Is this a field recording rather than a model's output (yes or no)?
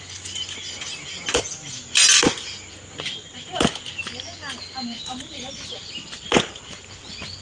yes